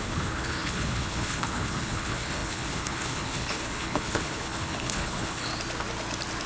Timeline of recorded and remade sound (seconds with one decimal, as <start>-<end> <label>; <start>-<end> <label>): 0.0-5.5 remade; 5.5-6.5 recorded